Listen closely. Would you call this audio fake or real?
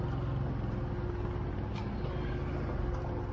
real